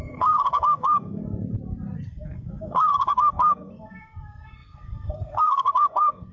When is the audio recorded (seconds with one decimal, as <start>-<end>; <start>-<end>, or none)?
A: 1.2-2.1